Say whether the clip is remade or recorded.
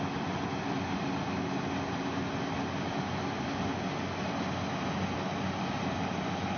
recorded